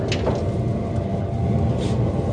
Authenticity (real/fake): real